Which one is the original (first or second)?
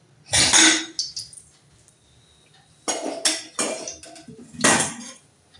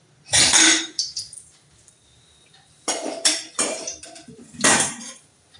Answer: first